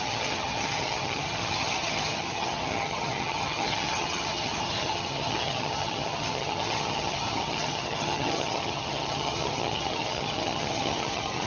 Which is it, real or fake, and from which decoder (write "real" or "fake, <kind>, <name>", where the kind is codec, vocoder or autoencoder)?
fake, vocoder, HiFi-GAN